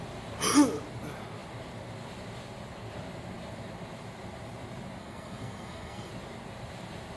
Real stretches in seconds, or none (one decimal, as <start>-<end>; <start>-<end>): 0.0-5.0; 6.1-7.2